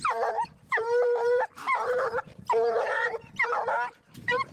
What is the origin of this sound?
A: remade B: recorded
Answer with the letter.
A